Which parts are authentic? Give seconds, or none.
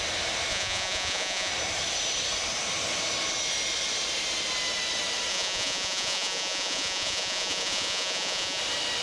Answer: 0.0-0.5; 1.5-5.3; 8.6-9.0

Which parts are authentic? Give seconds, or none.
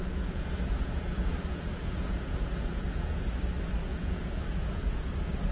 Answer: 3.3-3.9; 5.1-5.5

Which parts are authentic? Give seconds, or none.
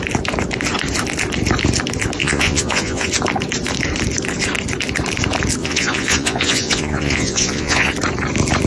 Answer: 0.0-2.2; 3.1-5.6; 7.9-8.7